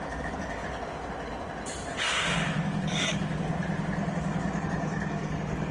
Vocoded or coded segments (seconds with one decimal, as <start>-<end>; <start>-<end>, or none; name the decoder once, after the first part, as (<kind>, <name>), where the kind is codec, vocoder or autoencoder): 0.0-0.6 (codec, DAC); 1.9-3.5; 4.2-5.7